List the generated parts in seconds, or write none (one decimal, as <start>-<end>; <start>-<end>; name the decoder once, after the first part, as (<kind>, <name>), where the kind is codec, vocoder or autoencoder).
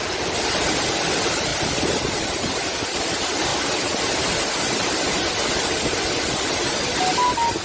0.0-0.5 (vocoder, BigVGAN v2); 1.5-3.0